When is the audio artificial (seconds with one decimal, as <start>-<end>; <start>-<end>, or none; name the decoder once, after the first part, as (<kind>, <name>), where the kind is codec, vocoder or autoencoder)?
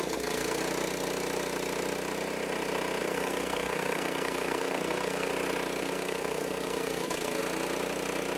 0.0-0.6 (codec, SNAC); 3.0-5.3; 5.8-7.4